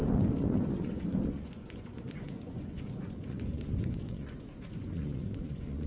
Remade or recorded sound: remade